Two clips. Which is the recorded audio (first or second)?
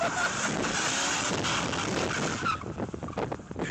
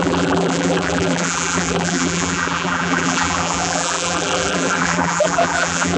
first